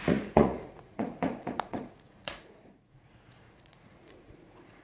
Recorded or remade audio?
remade